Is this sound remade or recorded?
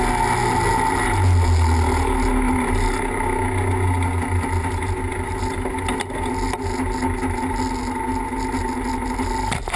recorded